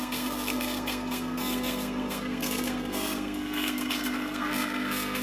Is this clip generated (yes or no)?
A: yes